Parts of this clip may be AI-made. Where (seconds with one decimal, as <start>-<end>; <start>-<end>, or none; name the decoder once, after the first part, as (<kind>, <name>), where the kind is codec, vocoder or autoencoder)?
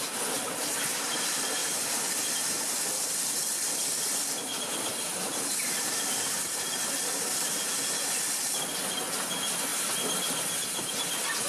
1.6-6.4 (vocoder, BigVGAN v2); 9.7-10.9